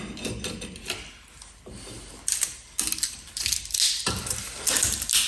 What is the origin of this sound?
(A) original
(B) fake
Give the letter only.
A